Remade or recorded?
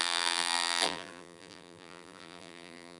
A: remade